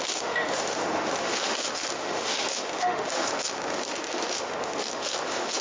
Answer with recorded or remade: remade